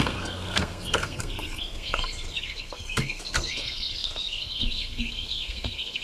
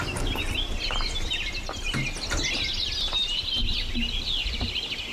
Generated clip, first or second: first